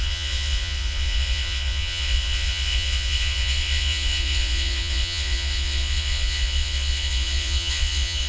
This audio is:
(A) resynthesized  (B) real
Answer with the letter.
A